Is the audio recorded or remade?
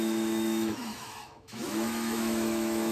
remade